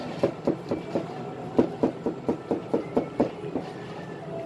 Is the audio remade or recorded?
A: recorded